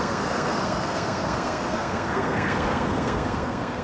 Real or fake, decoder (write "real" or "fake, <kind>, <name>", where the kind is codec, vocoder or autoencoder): fake, codec, SNAC